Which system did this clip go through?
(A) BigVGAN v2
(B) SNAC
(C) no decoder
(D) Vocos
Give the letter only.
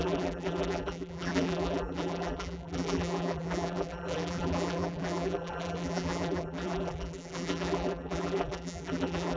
A